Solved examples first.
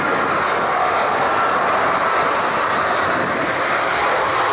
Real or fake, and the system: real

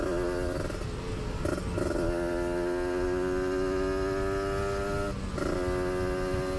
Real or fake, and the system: real